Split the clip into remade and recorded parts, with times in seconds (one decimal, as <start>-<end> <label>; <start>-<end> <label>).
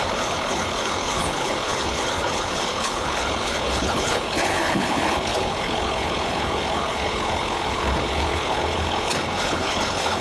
0.0-10.2 remade